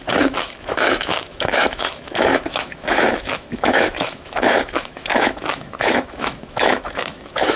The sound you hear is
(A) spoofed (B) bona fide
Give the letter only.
A